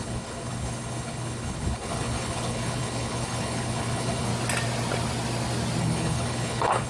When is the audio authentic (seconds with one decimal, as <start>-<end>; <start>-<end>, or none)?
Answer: 4.3-5.8